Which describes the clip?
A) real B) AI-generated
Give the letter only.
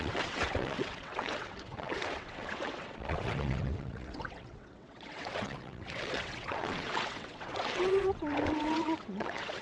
B